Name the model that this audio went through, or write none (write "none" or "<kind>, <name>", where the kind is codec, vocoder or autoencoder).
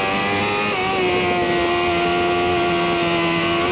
none